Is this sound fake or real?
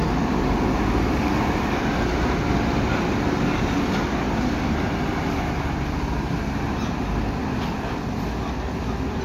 real